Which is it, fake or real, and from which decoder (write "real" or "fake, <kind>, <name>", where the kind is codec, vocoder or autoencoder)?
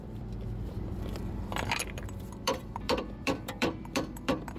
fake, vocoder, BigVGAN v2